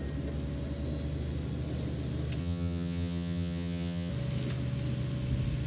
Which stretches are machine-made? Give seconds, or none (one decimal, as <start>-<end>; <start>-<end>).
2.4-4.1